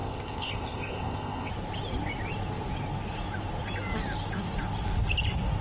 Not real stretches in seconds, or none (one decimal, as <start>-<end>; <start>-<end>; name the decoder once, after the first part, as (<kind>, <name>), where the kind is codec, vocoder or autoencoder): 0.0-1.5 (codec, ZipCodec)